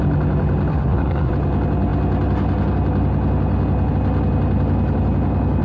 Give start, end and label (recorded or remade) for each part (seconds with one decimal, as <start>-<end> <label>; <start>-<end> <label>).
0.0-0.7 recorded; 0.7-1.3 remade; 1.3-5.6 recorded